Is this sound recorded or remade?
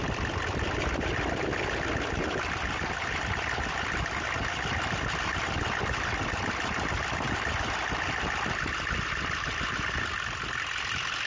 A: recorded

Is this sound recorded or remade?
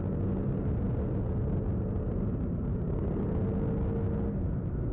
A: recorded